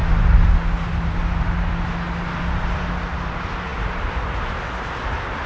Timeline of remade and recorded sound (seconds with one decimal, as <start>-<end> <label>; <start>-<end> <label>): 0.0-5.5 recorded

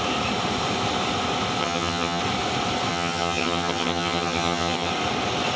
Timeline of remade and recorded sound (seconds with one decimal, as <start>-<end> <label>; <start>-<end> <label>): 0.0-1.6 recorded; 1.6-2.2 remade; 2.2-2.9 recorded; 2.9-4.9 remade; 4.9-5.6 recorded

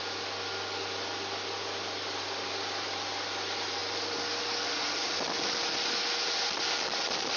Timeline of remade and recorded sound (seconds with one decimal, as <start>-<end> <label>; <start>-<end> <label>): 0.0-7.4 recorded

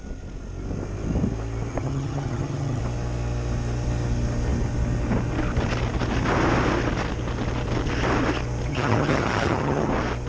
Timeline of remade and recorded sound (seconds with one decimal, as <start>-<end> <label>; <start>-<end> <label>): 0.0-1.7 recorded; 1.7-2.8 remade; 2.8-8.7 recorded; 8.7-9.9 remade; 9.9-10.3 recorded

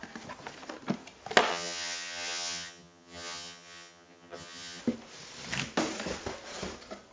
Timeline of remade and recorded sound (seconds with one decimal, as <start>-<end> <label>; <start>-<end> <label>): 0.0-1.5 recorded; 1.5-4.8 remade; 4.8-7.1 recorded

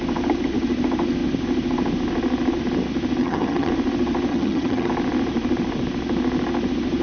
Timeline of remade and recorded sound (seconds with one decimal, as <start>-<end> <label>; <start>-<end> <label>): 0.0-3.2 recorded; 3.2-3.7 remade; 3.7-4.3 recorded; 4.3-4.9 remade; 4.9-7.0 recorded